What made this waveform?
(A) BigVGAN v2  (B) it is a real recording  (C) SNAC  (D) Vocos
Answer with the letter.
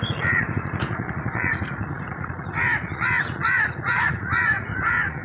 D